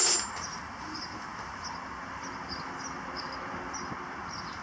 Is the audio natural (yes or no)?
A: yes